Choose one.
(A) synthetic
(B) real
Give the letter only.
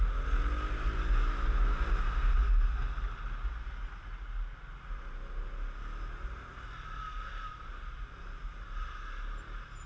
B